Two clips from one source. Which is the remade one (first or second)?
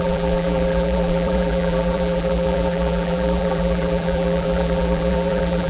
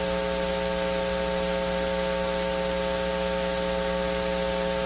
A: first